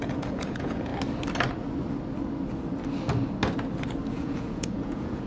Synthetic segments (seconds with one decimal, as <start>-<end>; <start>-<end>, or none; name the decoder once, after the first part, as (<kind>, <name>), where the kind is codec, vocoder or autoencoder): 0.0-0.9 (vocoder, Vocos); 4.1-5.3